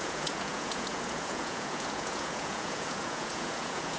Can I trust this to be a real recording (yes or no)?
no